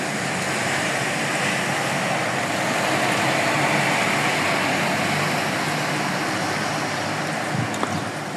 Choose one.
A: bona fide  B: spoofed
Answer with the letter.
A